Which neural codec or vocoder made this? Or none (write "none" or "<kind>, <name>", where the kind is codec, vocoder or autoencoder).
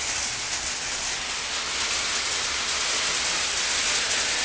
none